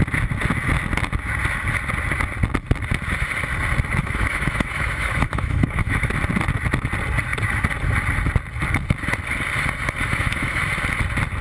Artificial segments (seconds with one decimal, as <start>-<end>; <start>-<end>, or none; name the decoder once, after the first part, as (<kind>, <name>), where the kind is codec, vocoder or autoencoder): 4.0-6.1 (autoencoder, DAC-VAE); 10.0-10.6